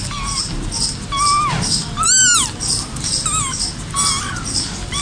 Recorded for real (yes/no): yes